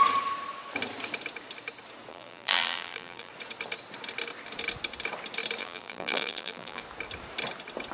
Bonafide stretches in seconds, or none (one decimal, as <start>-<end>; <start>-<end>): 0.0-2.1; 3.3-5.6; 6.8-7.9